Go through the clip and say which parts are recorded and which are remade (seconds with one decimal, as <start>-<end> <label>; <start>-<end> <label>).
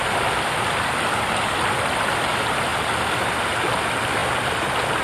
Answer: 0.0-5.0 recorded